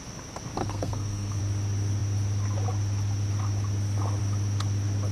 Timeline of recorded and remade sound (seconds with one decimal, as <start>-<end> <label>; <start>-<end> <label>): 0.0-0.6 recorded; 0.6-1.4 remade; 1.4-5.1 recorded